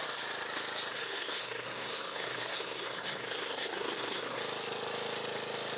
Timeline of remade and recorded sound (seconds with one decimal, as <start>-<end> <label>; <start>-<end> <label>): 0.0-0.9 recorded; 0.9-4.4 remade; 4.4-5.8 recorded